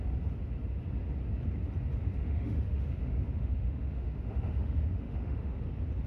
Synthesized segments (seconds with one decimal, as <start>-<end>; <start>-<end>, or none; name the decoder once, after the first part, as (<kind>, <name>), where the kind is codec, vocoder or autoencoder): 2.2-5.6 (autoencoder, DAC-VAE)

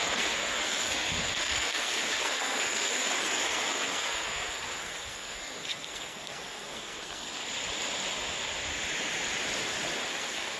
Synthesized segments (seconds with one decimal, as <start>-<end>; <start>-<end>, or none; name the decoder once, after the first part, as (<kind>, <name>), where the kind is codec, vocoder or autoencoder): 0.0-7.4 (codec, SNAC); 10.1-10.6

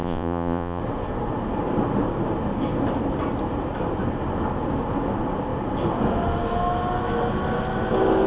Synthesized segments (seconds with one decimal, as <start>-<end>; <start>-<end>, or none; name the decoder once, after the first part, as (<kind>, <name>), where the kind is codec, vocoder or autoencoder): 0.0-0.8 (vocoder, Vocos)

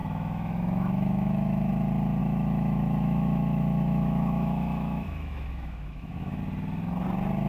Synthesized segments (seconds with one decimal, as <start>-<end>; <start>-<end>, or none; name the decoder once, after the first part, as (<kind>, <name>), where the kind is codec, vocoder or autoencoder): 0.0-1.7 (autoencoder, DAC-VAE); 2.2-6.4

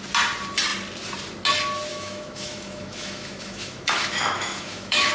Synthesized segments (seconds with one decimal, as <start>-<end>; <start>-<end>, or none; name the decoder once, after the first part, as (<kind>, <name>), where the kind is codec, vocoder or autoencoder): 1.9-5.1 (autoencoder, DAC-VAE)

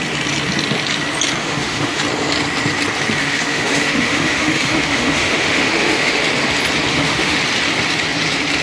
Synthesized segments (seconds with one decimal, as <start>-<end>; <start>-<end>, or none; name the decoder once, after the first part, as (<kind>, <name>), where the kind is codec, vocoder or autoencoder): 1.4-2.0 (autoencoder, DAC-VAE); 3.2-6.2; 6.9-7.4

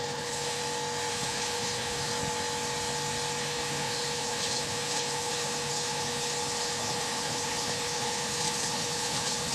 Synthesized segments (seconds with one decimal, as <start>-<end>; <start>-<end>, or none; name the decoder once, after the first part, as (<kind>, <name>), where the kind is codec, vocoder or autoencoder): 0.0-0.6 (codec, HILCodec); 1.1-2.1; 3.4-9.5